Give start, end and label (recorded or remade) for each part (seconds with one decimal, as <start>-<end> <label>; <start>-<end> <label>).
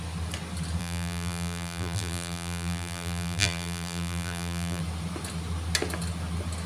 0.0-0.8 recorded; 0.8-4.8 remade; 4.8-6.7 recorded